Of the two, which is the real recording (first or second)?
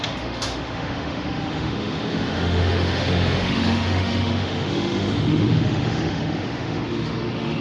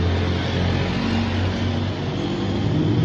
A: second